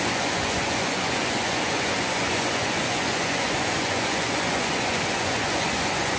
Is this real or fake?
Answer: fake